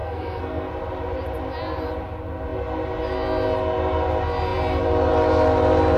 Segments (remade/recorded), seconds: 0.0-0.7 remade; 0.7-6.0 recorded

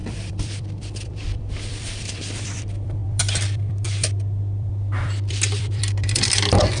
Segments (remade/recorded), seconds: 0.0-6.8 remade

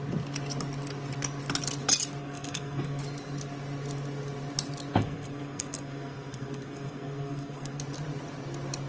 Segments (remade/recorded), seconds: 0.0-2.2 recorded; 2.2-3.0 remade; 3.0-4.9 recorded; 4.9-7.8 remade; 7.8-8.9 recorded

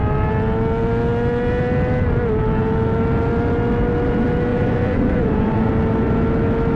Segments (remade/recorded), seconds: 0.0-4.5 recorded; 4.5-5.7 remade; 5.7-6.8 recorded

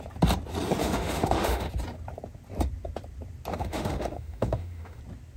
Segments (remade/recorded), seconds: 0.0-0.8 recorded; 0.8-1.7 remade; 1.7-3.5 recorded; 3.5-5.0 remade; 5.0-5.4 recorded

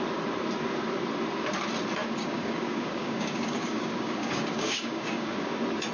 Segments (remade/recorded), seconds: 0.0-2.0 recorded; 2.0-5.5 remade; 5.5-5.9 recorded